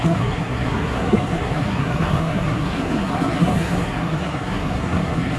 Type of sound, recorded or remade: remade